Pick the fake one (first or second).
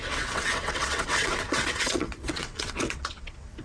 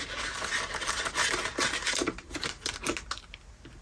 first